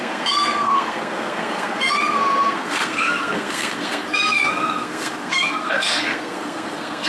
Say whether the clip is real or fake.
fake